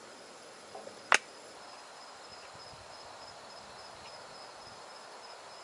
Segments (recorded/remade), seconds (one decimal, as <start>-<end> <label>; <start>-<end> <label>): 0.0-5.6 recorded